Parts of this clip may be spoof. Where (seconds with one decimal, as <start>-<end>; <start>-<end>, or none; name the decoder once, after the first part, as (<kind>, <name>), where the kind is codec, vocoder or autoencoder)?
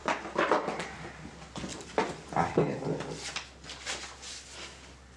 1.7-2.3 (vocoder, BigVGAN v2)